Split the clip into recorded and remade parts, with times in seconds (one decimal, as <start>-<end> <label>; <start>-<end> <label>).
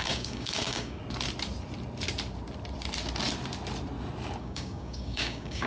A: 0.0-1.0 remade; 1.0-4.4 recorded; 4.4-5.7 remade